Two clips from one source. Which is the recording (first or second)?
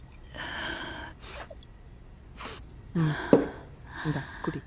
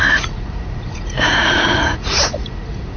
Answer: first